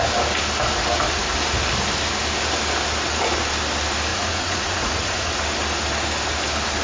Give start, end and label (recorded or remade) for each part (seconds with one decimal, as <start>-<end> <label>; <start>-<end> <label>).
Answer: 0.0-4.1 recorded; 4.1-5.3 remade; 5.3-6.8 recorded